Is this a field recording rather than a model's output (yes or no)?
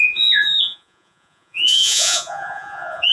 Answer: no